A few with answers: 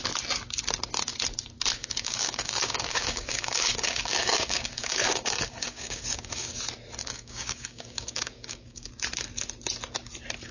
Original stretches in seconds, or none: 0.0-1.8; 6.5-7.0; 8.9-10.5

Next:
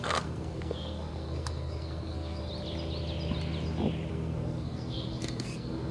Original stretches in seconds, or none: 2.4-4.1

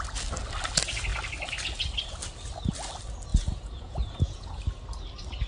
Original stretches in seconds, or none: 0.0-3.3; 4.6-5.5